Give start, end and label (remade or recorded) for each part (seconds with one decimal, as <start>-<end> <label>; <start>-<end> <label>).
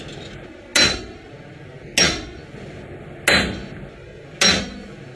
0.0-5.2 recorded